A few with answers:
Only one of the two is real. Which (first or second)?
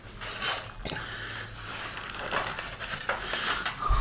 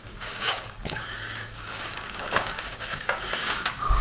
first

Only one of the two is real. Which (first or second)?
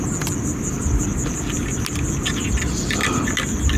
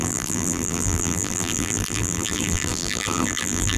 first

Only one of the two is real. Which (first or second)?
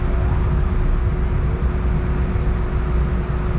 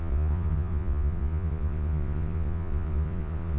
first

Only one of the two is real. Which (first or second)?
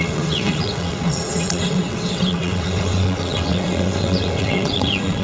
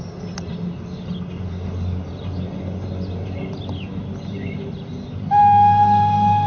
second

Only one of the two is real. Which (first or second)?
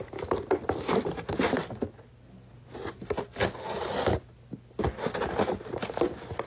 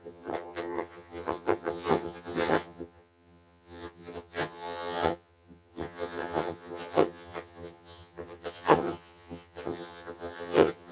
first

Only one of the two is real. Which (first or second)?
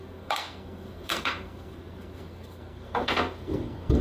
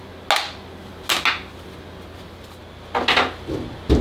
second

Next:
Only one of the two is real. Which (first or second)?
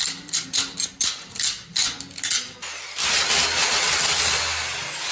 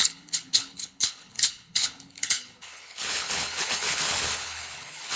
first